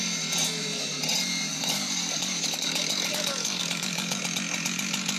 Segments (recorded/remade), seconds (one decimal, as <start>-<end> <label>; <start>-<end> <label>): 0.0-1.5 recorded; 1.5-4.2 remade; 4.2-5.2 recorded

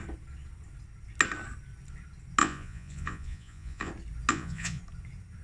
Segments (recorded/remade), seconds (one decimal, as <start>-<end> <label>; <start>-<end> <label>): 0.0-2.4 recorded; 2.4-3.9 remade; 3.9-4.3 recorded; 4.3-4.8 remade; 4.8-5.4 recorded

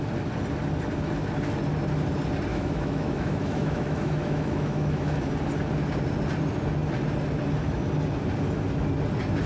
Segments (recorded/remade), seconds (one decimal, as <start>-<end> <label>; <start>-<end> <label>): 0.0-2.5 recorded; 2.5-5.3 remade; 5.3-9.5 recorded